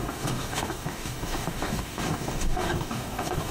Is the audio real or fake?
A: fake